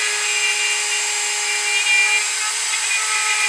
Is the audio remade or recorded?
recorded